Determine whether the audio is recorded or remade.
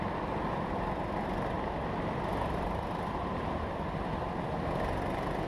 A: recorded